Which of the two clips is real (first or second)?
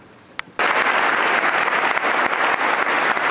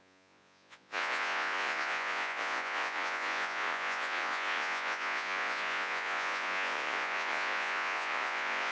first